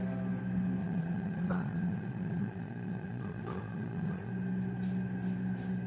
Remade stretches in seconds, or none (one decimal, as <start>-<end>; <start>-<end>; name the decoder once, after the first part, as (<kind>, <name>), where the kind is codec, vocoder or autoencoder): 0.8-4.3 (vocoder, Vocos)